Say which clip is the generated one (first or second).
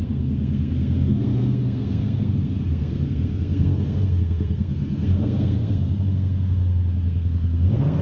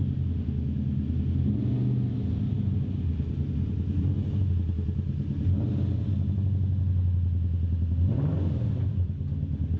first